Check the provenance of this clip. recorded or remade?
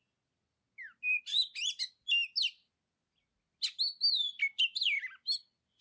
recorded